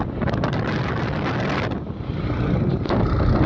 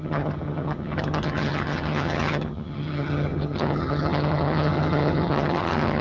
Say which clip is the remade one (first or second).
second